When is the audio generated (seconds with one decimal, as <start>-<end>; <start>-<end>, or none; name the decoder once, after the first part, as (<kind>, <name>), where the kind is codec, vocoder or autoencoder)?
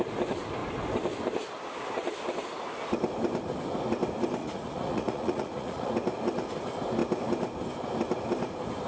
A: 4.4-5.9 (vocoder, Vocos)